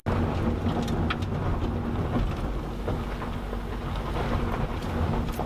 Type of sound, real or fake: real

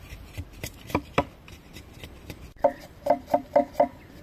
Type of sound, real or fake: fake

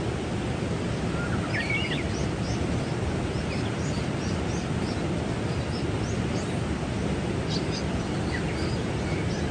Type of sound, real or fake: real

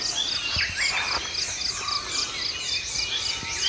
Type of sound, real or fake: real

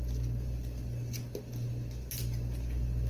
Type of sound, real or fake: real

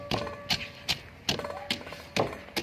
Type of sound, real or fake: real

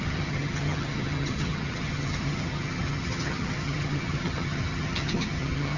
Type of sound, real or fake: fake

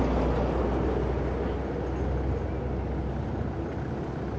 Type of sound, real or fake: real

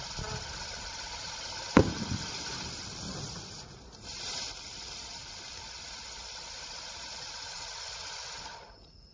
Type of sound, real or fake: real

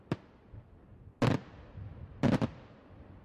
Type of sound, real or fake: real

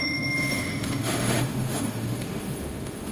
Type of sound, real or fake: fake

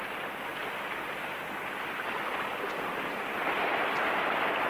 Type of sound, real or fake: real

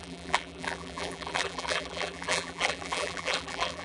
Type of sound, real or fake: fake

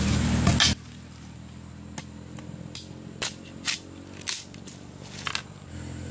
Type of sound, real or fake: real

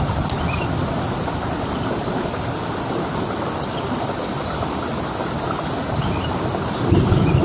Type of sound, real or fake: real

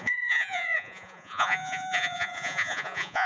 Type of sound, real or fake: fake